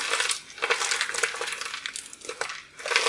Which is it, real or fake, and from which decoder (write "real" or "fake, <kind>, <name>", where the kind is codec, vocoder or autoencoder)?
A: real